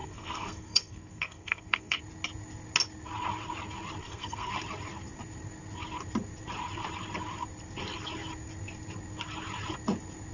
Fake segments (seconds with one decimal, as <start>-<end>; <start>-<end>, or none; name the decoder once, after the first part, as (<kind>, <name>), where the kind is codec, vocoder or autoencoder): 0.0-2.0 (codec, SNAC); 4.0-4.5